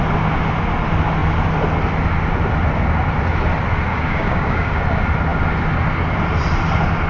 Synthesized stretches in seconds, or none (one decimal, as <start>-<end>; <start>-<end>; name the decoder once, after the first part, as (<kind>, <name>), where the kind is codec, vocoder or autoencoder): 3.9-4.8 (codec, DAC)

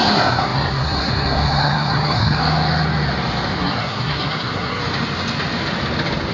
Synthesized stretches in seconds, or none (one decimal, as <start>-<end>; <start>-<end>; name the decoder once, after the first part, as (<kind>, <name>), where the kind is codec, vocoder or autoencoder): 0.0-2.4 (codec, SNAC); 3.6-4.8

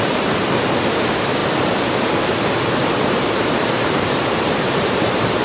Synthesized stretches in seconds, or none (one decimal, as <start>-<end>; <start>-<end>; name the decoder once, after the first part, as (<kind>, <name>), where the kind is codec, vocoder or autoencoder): 0.0-5.4 (vocoder, BigVGAN v2)

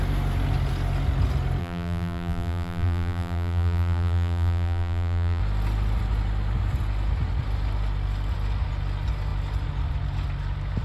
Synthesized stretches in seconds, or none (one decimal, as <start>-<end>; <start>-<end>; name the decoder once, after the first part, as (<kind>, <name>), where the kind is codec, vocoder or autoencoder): 1.6-5.4 (vocoder, BigVGAN v2)

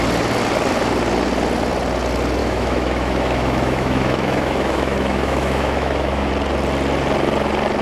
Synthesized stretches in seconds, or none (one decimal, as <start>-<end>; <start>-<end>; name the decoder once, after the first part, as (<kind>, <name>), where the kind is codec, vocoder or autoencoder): 2.4-6.3 (autoencoder, DAC-VAE)

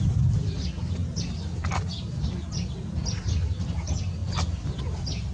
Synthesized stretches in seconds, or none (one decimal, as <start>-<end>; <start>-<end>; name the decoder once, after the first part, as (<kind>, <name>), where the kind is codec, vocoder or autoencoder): 0.0-1.0 (vocoder, BigVGAN v2); 2.9-5.3

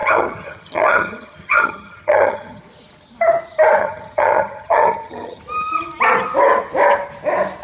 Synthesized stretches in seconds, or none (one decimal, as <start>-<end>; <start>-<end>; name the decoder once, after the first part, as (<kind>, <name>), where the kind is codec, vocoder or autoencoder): 0.0-2.6 (vocoder, HiFi-GAN); 3.8-5.4